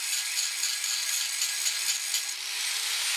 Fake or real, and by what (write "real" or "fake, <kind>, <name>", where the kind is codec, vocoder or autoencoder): real